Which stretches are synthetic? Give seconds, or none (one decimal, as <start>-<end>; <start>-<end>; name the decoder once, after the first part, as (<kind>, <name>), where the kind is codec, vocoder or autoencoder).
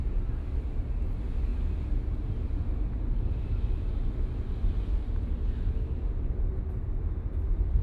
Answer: none